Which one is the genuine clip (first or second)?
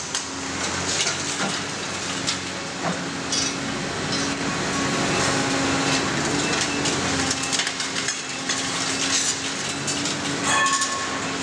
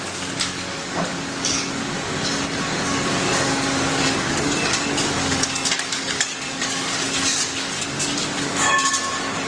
first